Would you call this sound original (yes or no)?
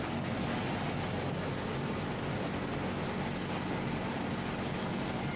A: yes